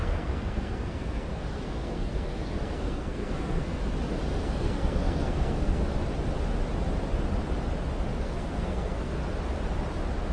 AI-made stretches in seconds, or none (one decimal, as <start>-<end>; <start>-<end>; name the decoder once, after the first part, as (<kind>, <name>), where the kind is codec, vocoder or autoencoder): 0.0-3.8 (codec, SNAC); 4.4-5.8; 8.2-9.2